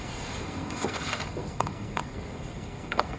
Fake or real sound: fake